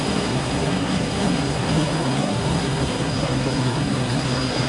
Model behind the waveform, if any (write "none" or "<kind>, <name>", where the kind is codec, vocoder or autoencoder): codec, SNAC